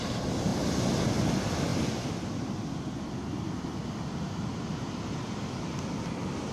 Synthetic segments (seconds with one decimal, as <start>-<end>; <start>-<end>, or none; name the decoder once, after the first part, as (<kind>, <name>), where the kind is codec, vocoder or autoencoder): none